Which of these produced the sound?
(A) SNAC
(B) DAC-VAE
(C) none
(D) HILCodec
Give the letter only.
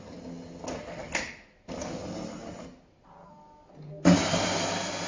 C